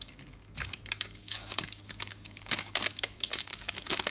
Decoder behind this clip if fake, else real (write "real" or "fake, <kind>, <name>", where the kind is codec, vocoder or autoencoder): fake, codec, DAC